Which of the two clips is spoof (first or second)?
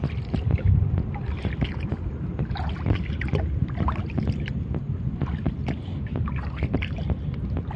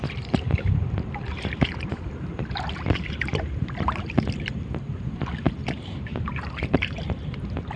second